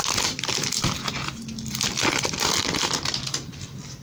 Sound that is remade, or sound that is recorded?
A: recorded